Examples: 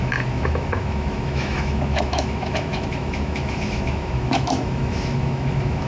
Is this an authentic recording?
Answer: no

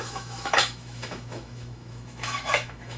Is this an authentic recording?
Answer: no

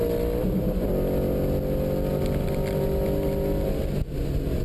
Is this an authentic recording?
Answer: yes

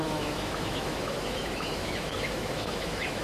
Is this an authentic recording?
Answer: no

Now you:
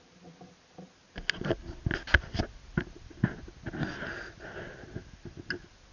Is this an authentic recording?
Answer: yes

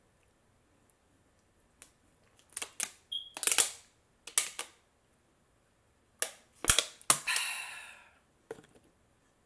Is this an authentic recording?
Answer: yes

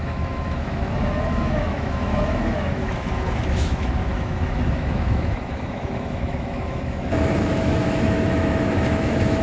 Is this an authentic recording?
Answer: no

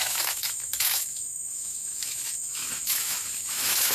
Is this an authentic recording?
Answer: no